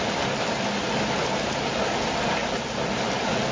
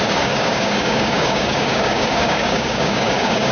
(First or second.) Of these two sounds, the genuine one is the first